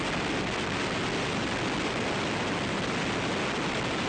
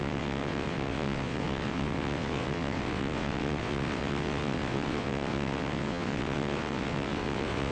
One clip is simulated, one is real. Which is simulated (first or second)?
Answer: second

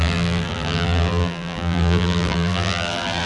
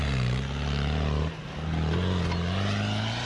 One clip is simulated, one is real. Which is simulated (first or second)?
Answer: first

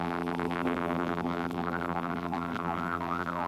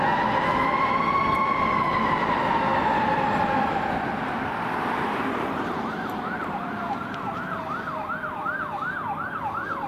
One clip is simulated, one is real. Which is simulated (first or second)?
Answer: first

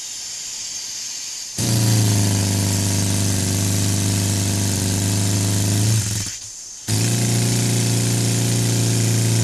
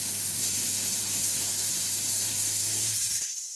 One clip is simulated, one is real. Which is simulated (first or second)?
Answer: second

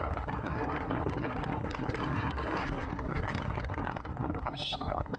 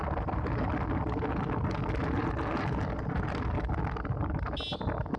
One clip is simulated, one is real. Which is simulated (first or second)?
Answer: first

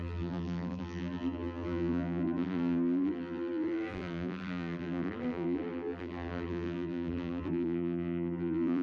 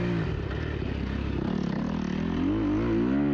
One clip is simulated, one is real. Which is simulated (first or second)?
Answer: first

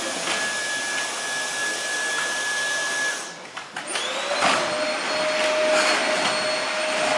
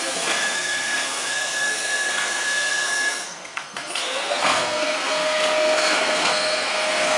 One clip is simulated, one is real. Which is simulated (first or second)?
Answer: second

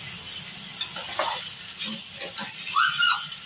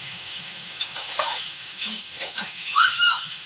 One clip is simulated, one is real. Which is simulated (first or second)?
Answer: second